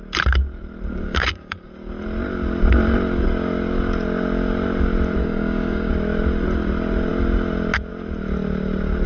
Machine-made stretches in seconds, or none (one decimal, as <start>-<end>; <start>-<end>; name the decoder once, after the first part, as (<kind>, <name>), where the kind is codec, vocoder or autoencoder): 0.9-1.7 (codec, DAC); 5.2-5.9

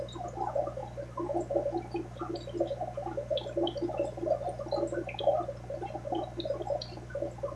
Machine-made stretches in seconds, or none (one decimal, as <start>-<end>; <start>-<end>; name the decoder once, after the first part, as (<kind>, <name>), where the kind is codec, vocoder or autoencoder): none

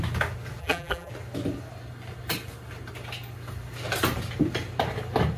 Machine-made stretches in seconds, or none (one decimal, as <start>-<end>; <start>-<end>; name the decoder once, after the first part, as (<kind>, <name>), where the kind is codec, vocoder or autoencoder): 0.6-1.1 (vocoder, BigVGAN v2)

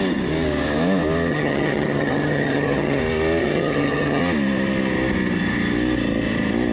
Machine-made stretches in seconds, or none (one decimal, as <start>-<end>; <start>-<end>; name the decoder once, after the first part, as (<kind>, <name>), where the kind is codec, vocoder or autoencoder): 1.3-3.0 (vocoder, HiFi-GAN); 3.4-4.2

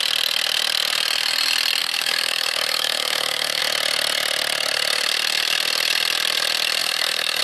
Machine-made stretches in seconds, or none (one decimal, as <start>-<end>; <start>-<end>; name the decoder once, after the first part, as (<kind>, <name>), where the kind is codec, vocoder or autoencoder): 1.8-3.6 (autoencoder, DAC-VAE); 6.8-7.4

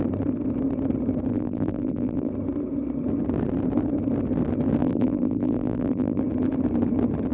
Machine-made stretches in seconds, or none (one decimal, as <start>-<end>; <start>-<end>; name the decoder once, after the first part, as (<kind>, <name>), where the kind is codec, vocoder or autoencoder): 1.3-2.3 (vocoder, BigVGAN v2); 4.8-6.2

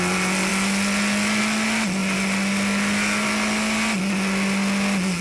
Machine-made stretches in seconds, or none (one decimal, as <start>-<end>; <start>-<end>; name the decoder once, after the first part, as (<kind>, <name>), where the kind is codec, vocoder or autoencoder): none